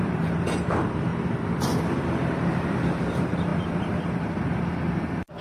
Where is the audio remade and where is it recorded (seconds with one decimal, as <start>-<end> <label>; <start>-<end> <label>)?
0.0-5.4 remade